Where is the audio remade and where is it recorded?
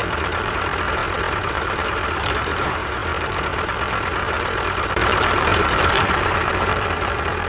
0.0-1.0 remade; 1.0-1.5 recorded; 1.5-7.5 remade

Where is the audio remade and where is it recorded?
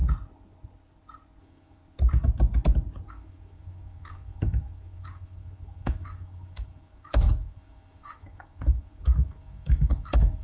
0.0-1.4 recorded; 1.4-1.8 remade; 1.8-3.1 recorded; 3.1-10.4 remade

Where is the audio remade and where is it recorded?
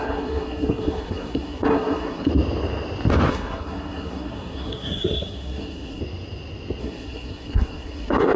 0.0-2.3 remade; 2.3-3.3 recorded; 3.3-6.0 remade; 6.0-6.8 recorded; 6.8-8.4 remade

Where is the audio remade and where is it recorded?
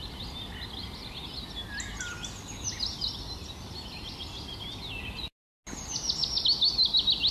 0.0-3.4 recorded; 3.4-4.9 remade; 4.9-7.3 recorded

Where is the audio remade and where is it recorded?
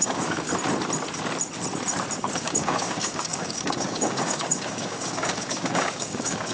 0.0-0.5 remade; 0.5-2.3 recorded; 2.3-6.5 remade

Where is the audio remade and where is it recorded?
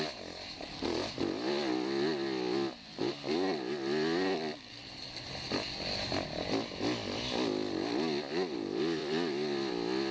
0.0-9.0 recorded; 9.0-9.7 remade; 9.7-10.1 recorded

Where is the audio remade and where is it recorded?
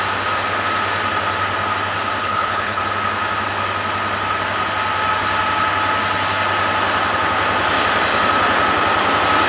0.0-2.2 recorded; 2.2-2.8 remade; 2.8-9.5 recorded